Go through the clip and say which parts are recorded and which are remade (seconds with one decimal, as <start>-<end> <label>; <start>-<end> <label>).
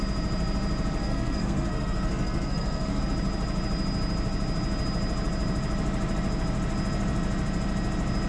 0.0-1.0 recorded; 1.0-3.0 remade; 3.0-8.3 recorded